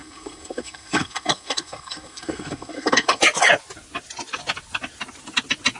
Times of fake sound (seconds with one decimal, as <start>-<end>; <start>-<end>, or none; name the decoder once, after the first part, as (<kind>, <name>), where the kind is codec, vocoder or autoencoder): 0.0-3.2 (codec, SNAC)